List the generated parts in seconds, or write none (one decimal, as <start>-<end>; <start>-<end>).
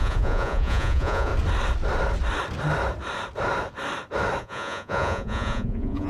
0.0-1.3; 4.4-6.1